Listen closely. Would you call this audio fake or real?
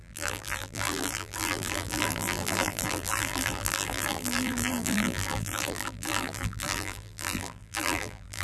fake